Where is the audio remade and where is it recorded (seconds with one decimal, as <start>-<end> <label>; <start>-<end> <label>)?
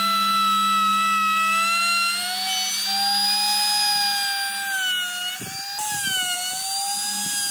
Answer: 0.0-7.5 recorded